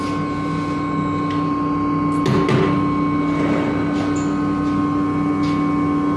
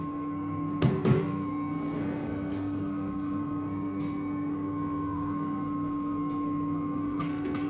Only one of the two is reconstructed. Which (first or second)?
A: second